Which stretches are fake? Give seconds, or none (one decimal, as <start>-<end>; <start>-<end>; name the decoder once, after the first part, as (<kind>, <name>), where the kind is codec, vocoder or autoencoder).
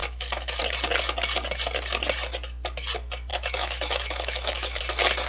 0.0-0.6 (autoencoder, DAC-VAE); 3.3-4.8